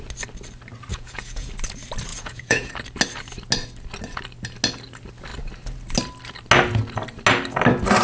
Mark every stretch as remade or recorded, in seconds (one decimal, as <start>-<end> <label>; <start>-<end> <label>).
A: 0.0-0.9 recorded; 0.9-1.5 remade; 1.5-2.1 recorded; 2.1-2.7 remade; 2.7-8.0 recorded